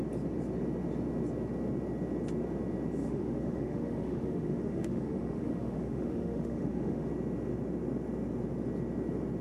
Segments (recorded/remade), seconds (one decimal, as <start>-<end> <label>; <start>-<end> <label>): 0.0-3.0 recorded; 3.0-7.1 remade; 7.1-9.4 recorded